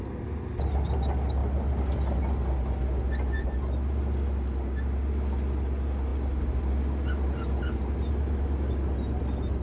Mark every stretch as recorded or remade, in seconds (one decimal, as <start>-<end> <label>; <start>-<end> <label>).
0.0-9.6 recorded